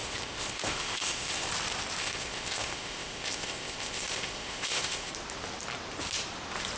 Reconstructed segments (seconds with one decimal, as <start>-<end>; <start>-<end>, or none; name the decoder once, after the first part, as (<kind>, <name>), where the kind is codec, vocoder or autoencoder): 0.0-1.5 (codec, ZipCodec); 2.0-5.1